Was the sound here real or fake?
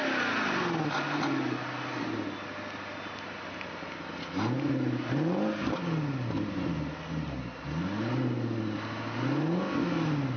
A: real